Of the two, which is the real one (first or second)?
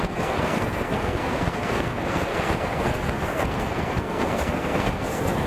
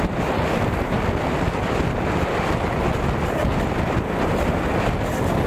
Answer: second